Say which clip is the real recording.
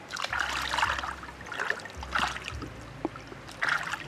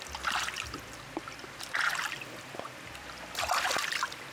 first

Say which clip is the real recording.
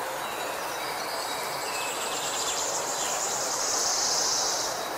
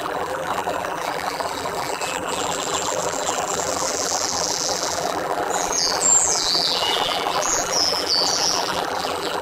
first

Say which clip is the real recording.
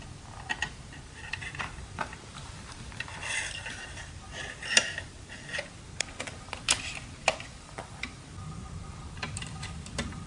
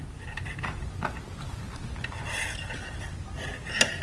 second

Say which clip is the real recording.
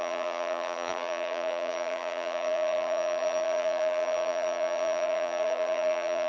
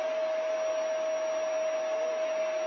second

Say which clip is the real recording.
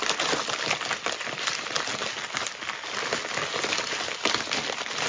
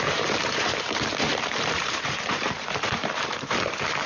first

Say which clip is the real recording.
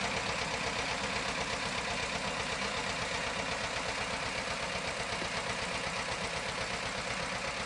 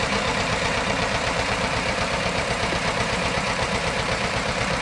first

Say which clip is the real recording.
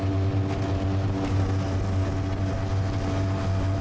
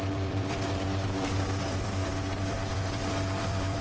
first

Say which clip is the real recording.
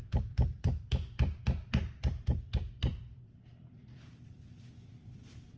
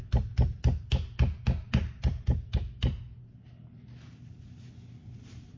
second